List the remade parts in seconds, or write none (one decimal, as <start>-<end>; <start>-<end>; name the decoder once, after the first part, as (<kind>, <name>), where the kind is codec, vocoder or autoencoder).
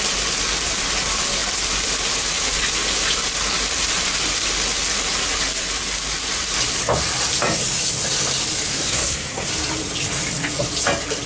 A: 8.7-9.5 (codec, SNAC)